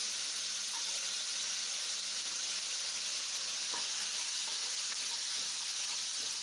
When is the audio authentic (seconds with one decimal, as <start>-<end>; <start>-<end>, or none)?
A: 0.0-1.6; 3.6-6.4